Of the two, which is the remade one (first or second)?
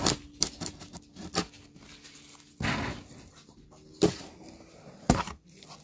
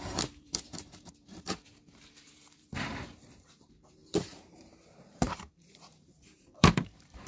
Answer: second